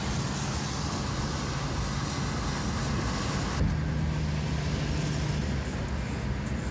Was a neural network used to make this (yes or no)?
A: no